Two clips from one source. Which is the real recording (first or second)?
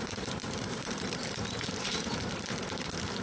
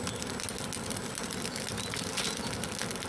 second